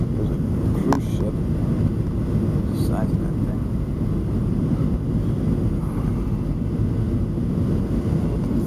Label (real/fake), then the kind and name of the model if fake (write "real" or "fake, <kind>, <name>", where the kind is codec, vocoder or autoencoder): real